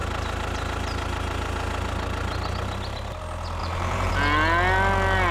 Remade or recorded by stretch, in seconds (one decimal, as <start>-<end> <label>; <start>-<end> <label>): 0.0-3.6 recorded; 3.6-4.1 remade; 4.1-5.3 recorded